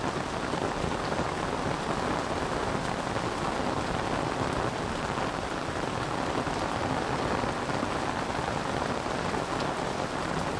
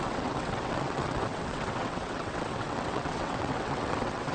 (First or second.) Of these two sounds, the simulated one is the second